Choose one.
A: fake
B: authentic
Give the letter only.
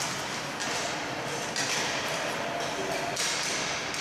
B